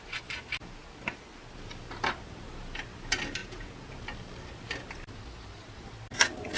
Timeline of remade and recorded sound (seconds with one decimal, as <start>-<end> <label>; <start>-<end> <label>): 0.0-3.4 recorded; 3.4-3.9 remade; 3.9-6.6 recorded